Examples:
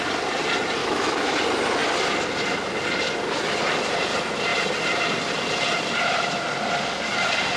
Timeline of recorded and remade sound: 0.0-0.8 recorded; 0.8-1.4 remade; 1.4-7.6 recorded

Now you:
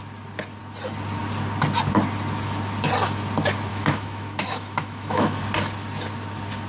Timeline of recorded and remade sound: 0.0-3.7 recorded; 3.7-5.4 remade; 5.4-6.7 recorded

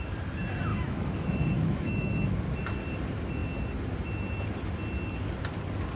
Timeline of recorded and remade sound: 0.0-0.7 recorded; 0.7-2.4 remade; 2.4-6.0 recorded

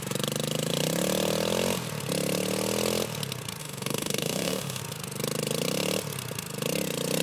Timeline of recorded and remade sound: 0.0-3.6 recorded; 3.6-4.8 remade; 4.8-7.2 recorded

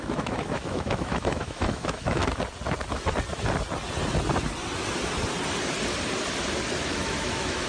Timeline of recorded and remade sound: 0.0-2.2 remade; 2.2-6.8 recorded; 6.8-7.7 remade

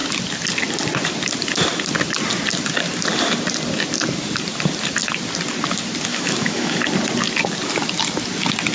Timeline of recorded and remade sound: 0.0-6.1 recorded; 6.1-6.8 remade; 6.8-8.7 recorded